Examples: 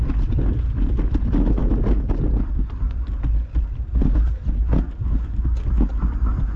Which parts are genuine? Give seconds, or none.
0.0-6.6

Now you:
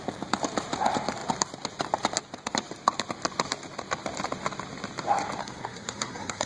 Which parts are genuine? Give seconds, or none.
0.0-5.4